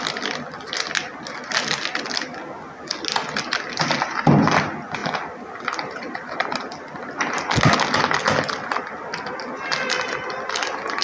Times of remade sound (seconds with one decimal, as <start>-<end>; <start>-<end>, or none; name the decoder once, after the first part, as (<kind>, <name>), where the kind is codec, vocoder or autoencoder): none